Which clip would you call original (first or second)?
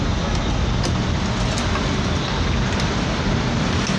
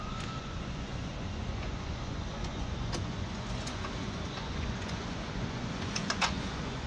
first